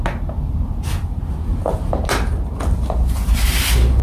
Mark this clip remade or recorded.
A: recorded